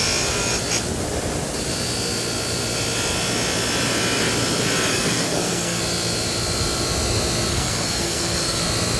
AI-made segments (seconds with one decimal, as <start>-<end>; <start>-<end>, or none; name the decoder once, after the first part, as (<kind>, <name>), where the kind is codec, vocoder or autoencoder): 4.9-5.8 (codec, SNAC); 7.5-8.6